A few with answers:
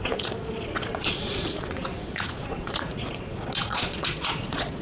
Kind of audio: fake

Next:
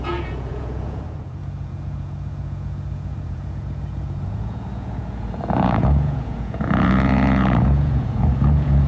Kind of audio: fake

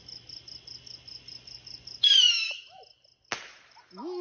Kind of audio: real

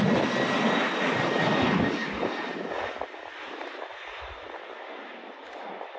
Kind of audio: real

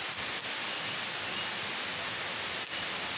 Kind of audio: real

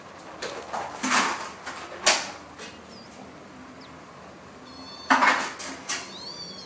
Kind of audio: real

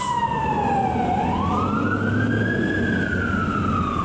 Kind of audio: real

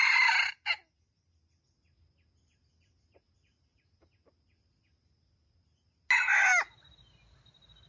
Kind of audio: real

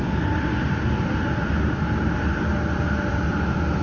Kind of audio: real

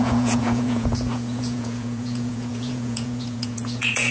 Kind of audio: fake